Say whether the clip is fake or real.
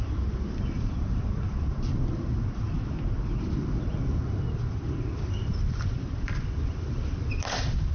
fake